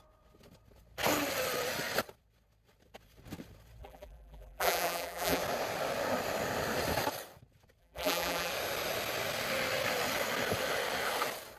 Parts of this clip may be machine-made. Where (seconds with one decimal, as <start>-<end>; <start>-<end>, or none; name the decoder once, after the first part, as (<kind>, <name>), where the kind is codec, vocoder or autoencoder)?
3.8-5.4 (vocoder, BigVGAN v2); 7.8-8.5